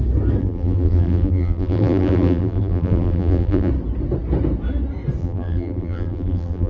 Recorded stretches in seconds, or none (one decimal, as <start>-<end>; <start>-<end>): 0.0-0.4; 3.7-5.2

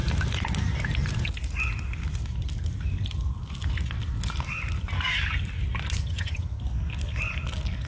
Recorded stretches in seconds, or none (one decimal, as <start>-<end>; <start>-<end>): 0.0-6.0; 6.6-7.9

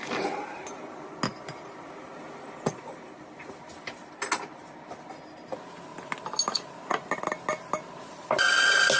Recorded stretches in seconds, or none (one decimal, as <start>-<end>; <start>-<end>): 0.0-9.0

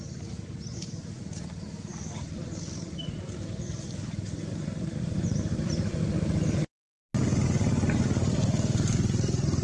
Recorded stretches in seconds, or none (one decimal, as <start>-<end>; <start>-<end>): 6.0-6.6

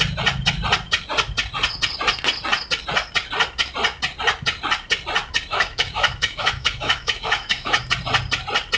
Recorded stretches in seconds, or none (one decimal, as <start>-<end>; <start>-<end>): 0.0-5.5; 7.8-8.8

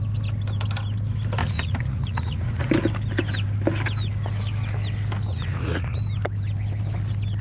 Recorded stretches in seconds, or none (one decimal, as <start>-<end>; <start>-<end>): 0.0-1.4; 2.7-5.3; 6.0-7.4

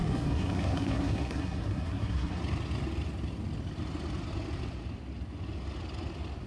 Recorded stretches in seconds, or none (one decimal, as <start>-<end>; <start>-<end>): 2.4-6.5

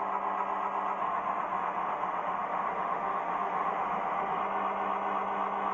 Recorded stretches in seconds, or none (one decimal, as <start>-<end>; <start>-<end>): 0.0-1.0; 4.4-5.7